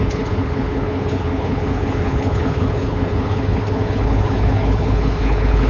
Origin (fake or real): fake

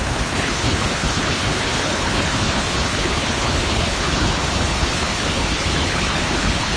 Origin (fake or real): fake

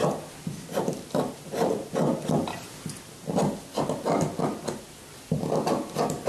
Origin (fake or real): real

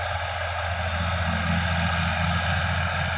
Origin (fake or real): real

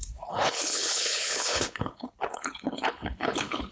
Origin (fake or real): fake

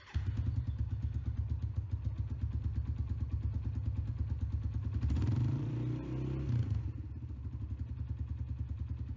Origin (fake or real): real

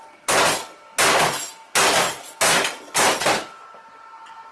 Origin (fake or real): real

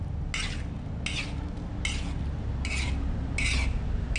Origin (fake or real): real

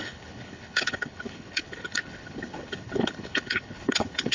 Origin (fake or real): fake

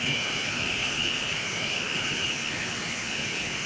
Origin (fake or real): fake